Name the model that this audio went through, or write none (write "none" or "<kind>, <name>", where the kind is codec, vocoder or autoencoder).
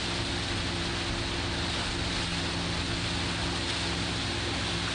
none